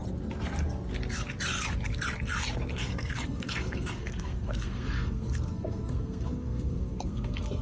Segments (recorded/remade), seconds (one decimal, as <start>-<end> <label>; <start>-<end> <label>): 0.0-2.7 recorded; 2.7-7.6 remade